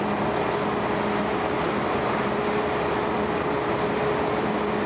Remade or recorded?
recorded